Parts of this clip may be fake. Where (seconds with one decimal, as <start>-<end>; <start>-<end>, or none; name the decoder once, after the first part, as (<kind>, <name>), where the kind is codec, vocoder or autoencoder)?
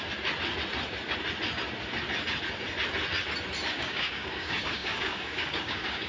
3.7-6.1 (codec, DAC)